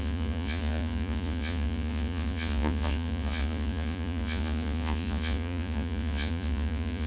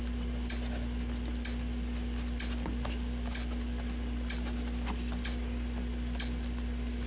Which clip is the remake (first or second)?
first